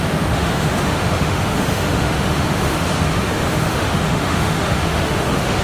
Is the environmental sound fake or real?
fake